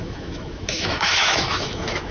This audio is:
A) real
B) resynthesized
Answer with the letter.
B